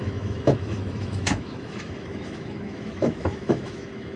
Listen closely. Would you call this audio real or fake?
fake